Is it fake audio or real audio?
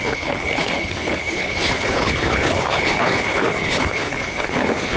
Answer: fake